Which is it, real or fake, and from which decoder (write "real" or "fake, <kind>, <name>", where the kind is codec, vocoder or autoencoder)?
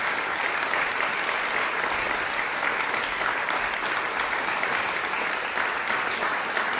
real